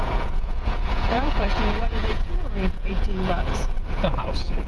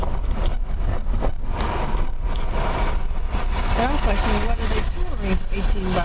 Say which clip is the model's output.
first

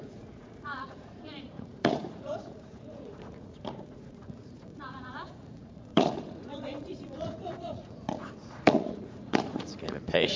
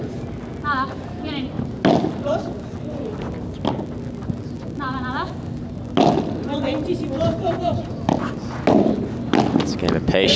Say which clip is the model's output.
first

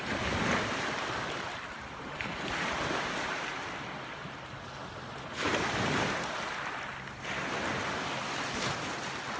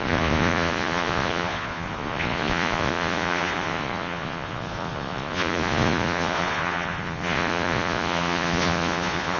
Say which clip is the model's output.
second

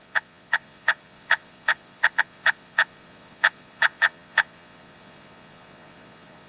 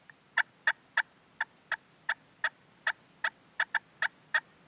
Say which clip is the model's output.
first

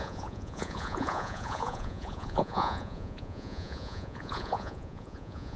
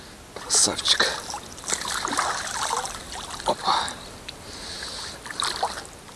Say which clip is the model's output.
first